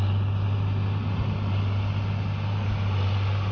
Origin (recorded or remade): recorded